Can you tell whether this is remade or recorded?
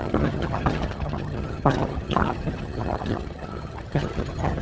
remade